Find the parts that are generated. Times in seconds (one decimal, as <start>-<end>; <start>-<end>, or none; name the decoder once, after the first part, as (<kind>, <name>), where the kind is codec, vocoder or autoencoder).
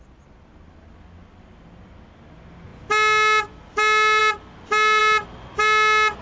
none